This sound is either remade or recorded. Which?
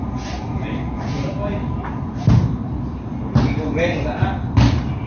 recorded